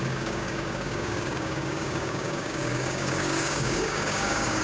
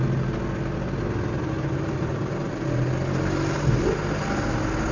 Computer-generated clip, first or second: first